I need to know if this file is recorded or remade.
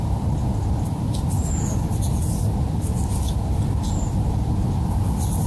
recorded